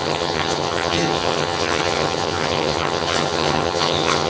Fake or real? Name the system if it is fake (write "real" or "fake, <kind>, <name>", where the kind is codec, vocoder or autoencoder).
fake, vocoder, HiFi-GAN